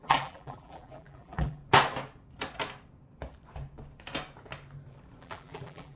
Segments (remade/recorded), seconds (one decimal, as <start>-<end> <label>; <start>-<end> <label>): 0.0-1.6 remade; 1.6-5.2 recorded; 5.2-6.0 remade